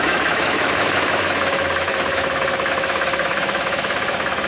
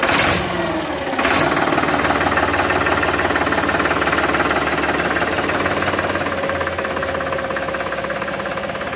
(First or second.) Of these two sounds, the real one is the second